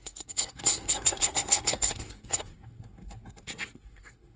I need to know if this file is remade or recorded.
remade